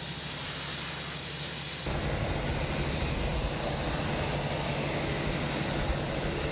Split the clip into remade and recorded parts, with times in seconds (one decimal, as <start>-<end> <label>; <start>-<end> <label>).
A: 0.0-6.5 recorded